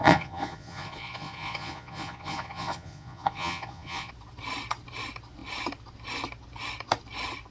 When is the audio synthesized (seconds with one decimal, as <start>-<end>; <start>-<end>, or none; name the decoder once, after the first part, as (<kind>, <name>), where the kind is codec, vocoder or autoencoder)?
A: 0.0-4.1 (vocoder, Vocos)